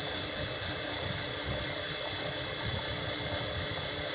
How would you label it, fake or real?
real